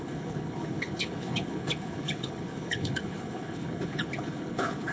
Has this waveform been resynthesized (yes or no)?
yes